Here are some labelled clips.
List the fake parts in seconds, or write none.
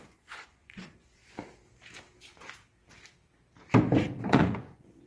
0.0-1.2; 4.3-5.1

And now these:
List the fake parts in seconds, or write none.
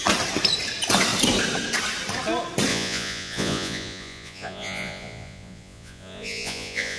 2.7-7.0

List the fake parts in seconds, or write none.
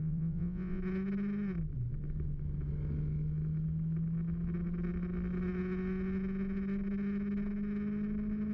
0.0-0.8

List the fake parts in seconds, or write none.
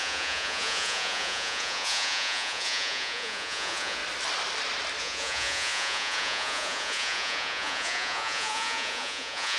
0.0-4.0; 5.0-9.6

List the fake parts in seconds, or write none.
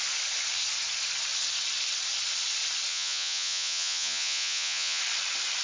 2.9-5.0